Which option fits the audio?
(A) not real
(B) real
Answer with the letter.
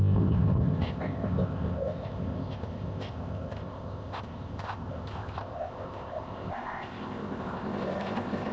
A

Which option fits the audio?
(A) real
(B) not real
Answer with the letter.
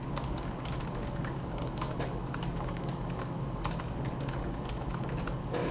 B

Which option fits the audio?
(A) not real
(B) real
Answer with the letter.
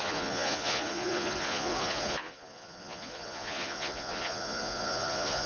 A